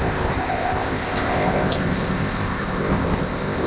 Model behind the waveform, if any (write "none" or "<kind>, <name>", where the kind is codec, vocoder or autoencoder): codec, ZipCodec